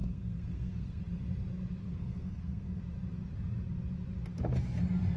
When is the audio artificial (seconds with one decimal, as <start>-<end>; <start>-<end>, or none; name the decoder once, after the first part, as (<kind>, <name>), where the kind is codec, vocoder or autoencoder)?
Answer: 0.0-1.0 (codec, SNAC); 1.8-2.8